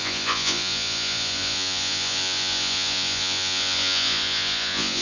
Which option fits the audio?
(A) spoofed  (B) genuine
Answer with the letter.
A